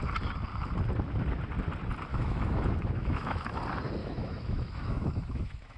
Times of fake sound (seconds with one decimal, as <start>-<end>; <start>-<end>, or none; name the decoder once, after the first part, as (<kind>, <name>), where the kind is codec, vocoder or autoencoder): 2.1-3.6 (autoencoder, DAC-VAE); 4.0-5.8